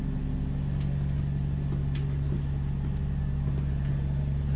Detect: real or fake real